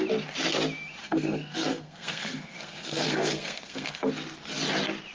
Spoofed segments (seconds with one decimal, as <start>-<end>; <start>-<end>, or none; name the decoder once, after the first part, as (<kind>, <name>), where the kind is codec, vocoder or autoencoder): 1.0-4.1 (codec, SNAC)